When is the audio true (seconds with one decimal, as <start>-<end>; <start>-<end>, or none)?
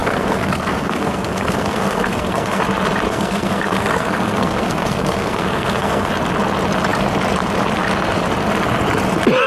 2.6-3.1; 6.1-9.5